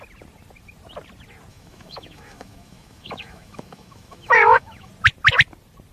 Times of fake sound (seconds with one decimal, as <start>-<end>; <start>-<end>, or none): 1.5-4.9